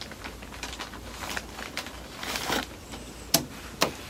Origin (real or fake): real